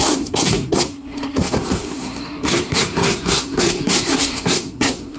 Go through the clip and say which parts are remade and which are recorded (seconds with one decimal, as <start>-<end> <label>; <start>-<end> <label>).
0.0-5.2 remade